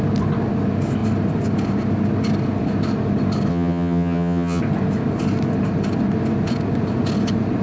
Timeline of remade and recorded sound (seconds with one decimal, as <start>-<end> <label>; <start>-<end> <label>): 0.0-3.5 recorded; 3.5-4.6 remade; 4.6-7.6 recorded